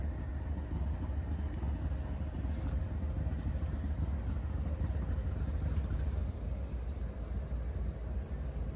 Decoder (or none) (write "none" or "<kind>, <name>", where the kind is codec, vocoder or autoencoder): none